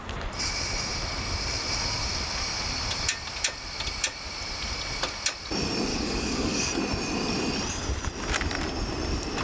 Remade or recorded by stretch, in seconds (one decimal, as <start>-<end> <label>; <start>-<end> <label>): 0.0-5.9 recorded; 5.9-6.7 remade; 6.7-9.4 recorded